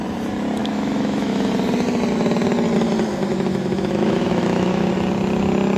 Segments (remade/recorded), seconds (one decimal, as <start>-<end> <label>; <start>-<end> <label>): 0.0-0.6 recorded; 0.6-1.5 remade; 1.5-3.3 recorded; 3.3-4.9 remade; 4.9-5.8 recorded